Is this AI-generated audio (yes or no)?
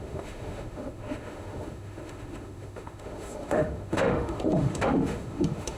yes